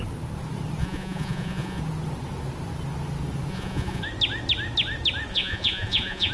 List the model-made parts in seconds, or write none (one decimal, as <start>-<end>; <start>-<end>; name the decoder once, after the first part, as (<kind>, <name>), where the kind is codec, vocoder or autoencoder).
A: 0.8-1.8 (vocoder, Vocos); 3.5-4.0; 5.3-6.3